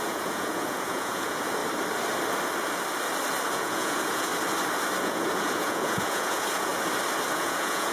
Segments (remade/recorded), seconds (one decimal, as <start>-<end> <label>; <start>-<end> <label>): 0.0-1.6 remade; 1.6-3.5 recorded; 3.5-4.3 remade; 4.3-5.0 recorded; 5.0-6.7 remade; 6.7-7.3 recorded; 7.3-7.9 remade

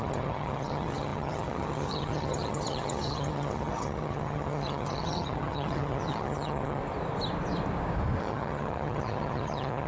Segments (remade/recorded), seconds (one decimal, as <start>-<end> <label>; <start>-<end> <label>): 0.0-6.8 remade; 6.8-8.2 recorded; 8.2-9.9 remade

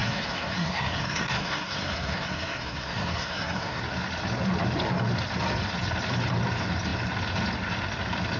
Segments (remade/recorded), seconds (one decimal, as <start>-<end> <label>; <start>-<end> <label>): 0.0-3.8 remade; 3.8-8.4 recorded

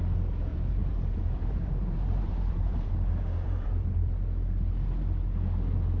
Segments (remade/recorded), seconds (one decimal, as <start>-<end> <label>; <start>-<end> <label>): 0.0-0.5 recorded; 0.5-4.1 remade; 4.1-6.0 recorded

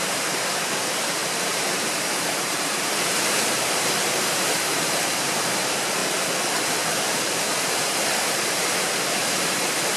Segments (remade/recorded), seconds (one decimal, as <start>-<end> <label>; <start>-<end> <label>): 0.0-6.0 remade; 6.0-7.0 recorded; 7.0-10.0 remade